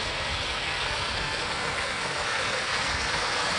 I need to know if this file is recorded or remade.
remade